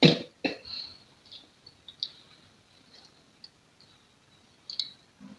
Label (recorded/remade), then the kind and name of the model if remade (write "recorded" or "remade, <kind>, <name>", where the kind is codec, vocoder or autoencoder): recorded